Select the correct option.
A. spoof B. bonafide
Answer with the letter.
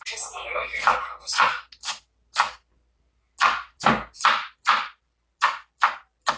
B